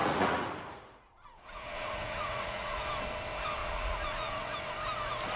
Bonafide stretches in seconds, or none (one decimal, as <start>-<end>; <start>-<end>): 2.8-3.6; 4.4-5.4